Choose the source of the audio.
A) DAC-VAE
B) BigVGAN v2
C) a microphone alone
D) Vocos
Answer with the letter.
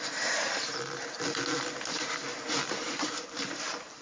B